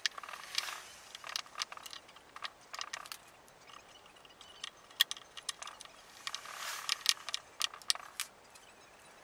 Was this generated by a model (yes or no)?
no